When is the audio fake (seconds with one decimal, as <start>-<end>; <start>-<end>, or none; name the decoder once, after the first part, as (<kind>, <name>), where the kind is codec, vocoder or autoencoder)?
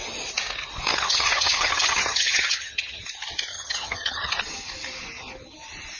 0.9-3.0 (vocoder, HiFi-GAN); 3.5-4.3